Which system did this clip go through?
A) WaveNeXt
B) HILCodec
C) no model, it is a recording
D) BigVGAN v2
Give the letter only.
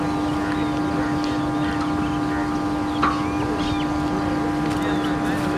C